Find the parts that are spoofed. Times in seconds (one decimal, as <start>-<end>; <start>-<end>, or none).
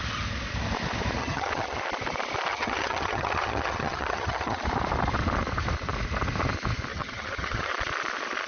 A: 1.2-1.8; 2.5-4.6; 6.9-7.7